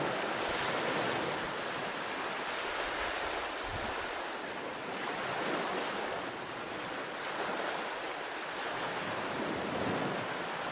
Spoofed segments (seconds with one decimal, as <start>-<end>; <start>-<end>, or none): none